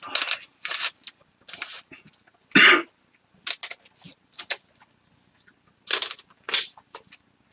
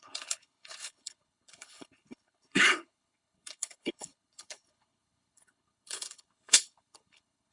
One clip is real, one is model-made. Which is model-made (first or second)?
second